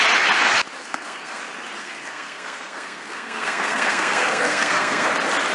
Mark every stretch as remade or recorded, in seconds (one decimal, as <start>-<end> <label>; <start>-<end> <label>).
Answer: 0.0-0.8 recorded; 0.8-1.4 remade; 1.4-1.8 recorded; 1.8-5.1 remade; 5.1-5.5 recorded

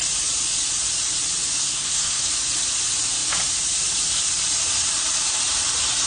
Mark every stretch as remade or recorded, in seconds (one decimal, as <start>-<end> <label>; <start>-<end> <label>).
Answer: 0.0-1.6 recorded; 1.6-2.3 remade; 2.3-6.1 recorded

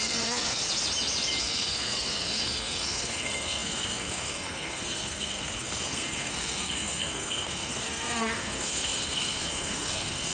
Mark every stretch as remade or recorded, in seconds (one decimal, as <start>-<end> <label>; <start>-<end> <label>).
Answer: 0.0-0.6 remade; 0.6-1.4 recorded; 1.4-10.3 remade

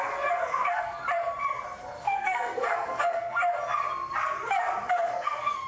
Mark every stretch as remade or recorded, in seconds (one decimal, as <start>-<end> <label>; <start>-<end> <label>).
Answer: 0.0-1.0 remade; 1.0-2.0 recorded; 2.0-3.4 remade; 3.4-4.9 recorded; 4.9-5.7 remade

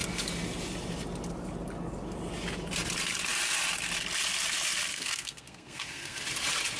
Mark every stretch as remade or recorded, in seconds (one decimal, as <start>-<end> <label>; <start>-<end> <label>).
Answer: 0.0-4.9 recorded; 4.9-6.2 remade; 6.2-6.8 recorded

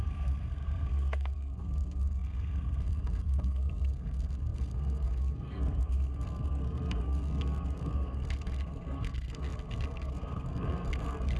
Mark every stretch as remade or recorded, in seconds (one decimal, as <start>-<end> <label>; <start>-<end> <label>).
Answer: 0.0-11.4 remade

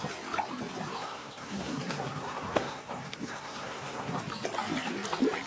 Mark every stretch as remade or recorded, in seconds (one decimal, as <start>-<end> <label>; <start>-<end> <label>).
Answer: 0.0-0.9 recorded; 0.9-4.2 remade; 4.2-5.5 recorded